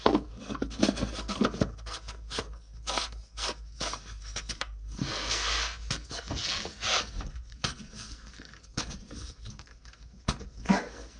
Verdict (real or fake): fake